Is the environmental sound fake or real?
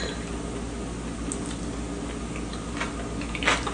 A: real